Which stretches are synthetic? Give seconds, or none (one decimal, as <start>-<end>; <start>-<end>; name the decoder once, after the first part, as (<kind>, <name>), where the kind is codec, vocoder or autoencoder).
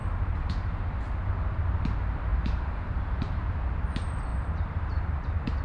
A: 0.0-0.8 (vocoder, BigVGAN v2); 2.3-3.4; 4.3-5.6